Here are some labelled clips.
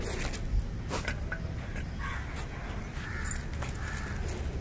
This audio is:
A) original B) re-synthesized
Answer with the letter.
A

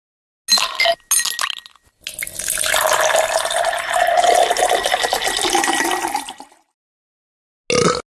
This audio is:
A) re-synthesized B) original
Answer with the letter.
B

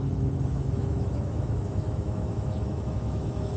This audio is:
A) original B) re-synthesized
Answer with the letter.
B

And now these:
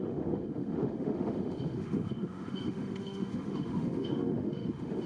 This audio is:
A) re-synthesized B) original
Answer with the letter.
A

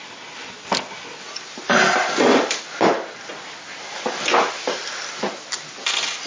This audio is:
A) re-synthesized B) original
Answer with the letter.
B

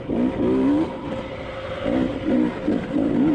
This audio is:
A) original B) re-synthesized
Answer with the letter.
A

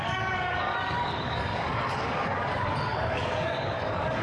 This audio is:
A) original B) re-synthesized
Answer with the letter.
B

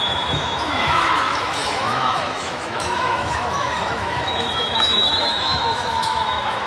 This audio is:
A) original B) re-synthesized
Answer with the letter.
B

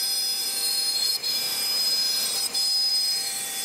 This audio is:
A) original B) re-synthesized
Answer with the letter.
B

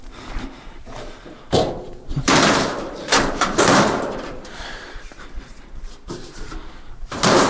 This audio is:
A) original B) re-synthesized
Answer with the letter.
B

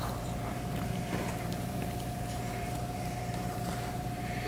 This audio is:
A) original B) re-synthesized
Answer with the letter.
B